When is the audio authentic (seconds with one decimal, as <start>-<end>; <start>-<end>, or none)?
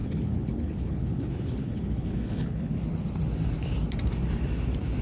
2.8-5.0